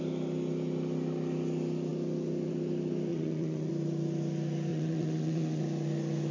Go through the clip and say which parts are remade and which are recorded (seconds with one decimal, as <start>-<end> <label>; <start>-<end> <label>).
0.0-3.1 recorded; 3.1-3.7 remade; 3.7-4.7 recorded; 4.7-5.6 remade; 5.6-6.3 recorded